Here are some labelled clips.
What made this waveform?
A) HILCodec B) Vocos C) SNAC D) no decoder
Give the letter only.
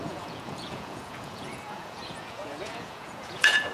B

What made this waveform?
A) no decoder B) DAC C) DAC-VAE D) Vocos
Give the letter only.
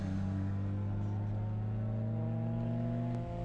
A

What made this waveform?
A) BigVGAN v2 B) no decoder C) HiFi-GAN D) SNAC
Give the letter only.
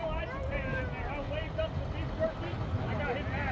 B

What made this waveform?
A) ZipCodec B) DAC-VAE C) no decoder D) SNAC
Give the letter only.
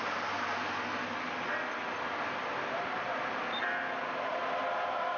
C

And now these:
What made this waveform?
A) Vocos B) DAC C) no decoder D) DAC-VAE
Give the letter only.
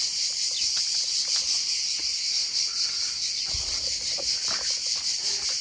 C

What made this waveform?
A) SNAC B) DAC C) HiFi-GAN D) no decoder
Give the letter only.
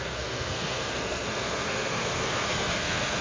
A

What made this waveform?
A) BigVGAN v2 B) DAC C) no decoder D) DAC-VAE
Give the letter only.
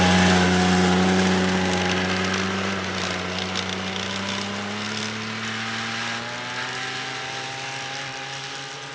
C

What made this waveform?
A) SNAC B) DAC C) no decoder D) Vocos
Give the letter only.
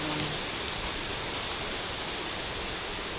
C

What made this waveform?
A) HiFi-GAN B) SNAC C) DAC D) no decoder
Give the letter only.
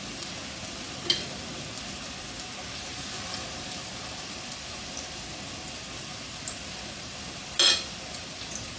D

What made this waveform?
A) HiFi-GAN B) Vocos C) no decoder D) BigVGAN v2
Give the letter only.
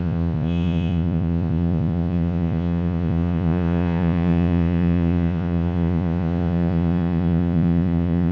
B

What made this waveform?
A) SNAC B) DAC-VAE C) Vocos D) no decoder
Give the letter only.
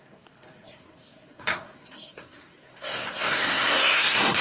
A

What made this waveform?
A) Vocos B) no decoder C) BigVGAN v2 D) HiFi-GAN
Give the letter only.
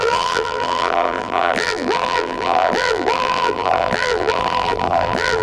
C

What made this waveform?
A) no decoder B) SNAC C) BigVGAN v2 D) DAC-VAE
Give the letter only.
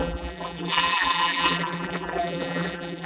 C